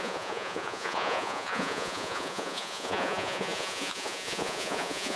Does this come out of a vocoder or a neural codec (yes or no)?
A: yes